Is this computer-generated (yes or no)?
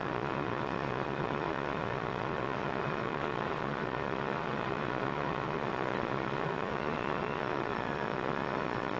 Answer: yes